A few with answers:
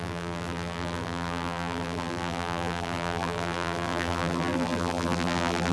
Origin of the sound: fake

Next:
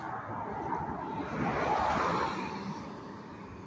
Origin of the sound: real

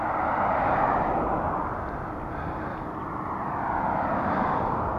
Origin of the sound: real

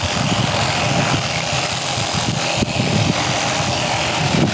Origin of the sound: real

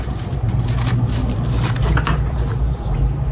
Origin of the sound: fake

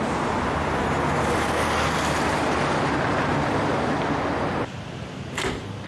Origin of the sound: real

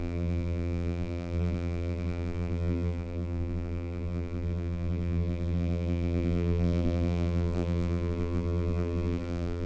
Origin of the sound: fake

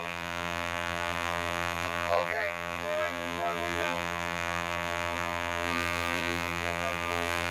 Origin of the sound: fake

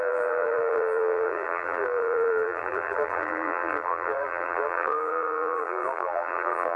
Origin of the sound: fake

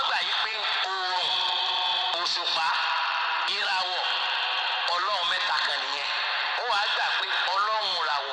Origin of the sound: fake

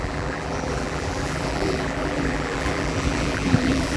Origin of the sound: fake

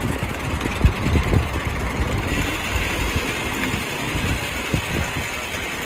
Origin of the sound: real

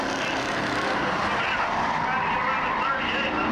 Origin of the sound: real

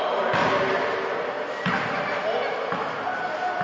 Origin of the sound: real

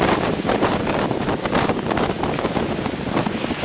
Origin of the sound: fake